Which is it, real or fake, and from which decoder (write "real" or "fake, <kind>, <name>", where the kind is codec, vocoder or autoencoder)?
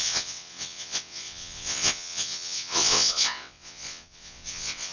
fake, vocoder, WaveNeXt